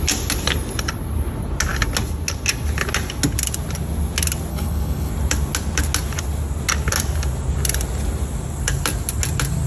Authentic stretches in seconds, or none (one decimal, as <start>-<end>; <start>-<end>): 0.0-4.5; 5.1-9.7